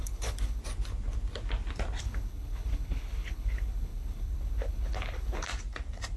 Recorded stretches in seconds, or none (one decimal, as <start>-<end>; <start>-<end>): 0.6-2.0; 5.5-6.2